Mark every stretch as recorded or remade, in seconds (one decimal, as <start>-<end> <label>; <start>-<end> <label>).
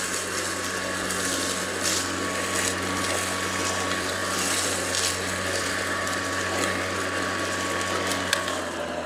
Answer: 0.0-9.1 recorded